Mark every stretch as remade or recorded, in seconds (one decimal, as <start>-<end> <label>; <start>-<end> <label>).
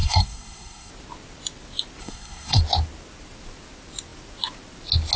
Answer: 0.0-0.9 remade; 0.9-2.0 recorded; 2.0-2.6 remade; 2.6-5.2 recorded